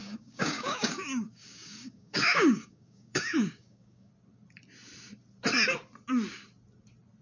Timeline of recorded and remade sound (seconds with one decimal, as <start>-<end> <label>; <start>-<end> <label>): 0.0-4.1 remade; 4.1-7.2 recorded